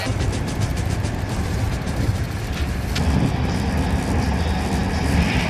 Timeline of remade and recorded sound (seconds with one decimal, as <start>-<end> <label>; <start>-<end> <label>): 0.0-0.7 recorded; 0.7-2.8 remade; 2.8-5.5 recorded